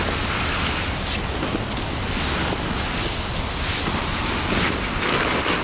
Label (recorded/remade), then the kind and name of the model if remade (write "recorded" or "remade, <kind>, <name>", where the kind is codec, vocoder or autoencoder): recorded